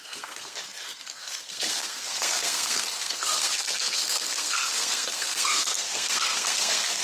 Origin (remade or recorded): remade